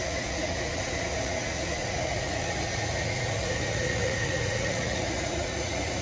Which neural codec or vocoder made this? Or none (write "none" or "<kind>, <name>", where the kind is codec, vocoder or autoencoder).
vocoder, Vocos